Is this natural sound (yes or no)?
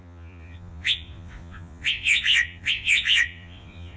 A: no